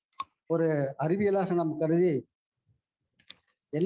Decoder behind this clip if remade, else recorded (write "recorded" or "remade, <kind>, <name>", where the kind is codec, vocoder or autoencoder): remade, autoencoder, DAC-VAE